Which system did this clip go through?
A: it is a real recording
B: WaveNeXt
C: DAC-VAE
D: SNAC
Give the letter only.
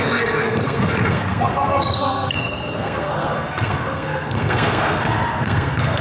D